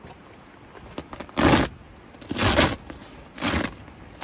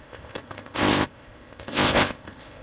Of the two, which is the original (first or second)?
first